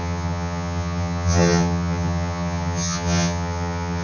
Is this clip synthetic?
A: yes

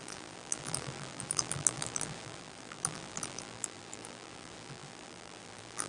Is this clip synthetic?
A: yes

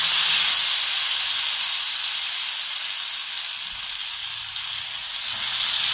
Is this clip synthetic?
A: no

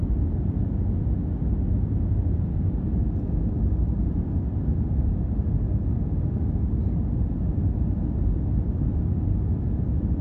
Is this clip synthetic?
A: no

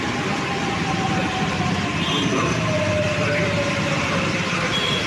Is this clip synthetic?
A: no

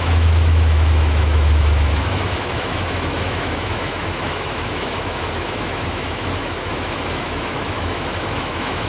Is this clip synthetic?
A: yes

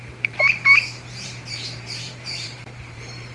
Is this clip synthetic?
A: yes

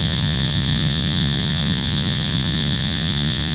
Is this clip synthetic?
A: yes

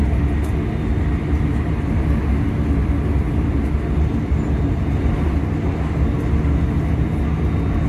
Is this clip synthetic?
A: no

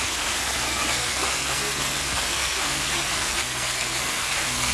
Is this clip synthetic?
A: yes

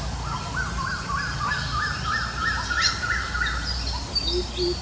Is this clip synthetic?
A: yes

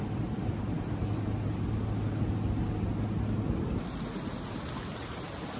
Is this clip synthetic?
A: no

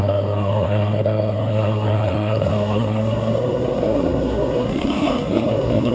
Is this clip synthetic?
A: yes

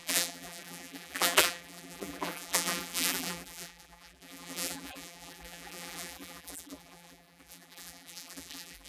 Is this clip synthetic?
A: yes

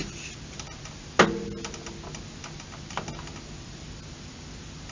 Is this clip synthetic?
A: no